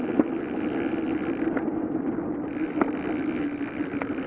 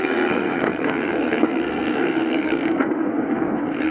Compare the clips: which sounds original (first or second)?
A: first